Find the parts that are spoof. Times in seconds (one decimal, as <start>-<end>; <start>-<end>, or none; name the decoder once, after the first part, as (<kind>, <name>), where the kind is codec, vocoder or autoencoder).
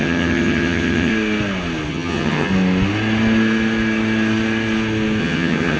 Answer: 0.0-1.1 (vocoder, HiFi-GAN); 1.9-2.5; 5.2-5.8